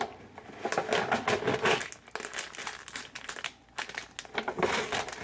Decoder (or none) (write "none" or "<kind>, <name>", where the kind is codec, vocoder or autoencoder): none